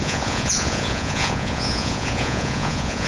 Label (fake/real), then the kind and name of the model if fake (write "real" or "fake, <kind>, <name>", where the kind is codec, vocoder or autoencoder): fake, vocoder, Vocos